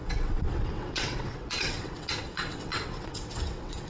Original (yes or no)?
no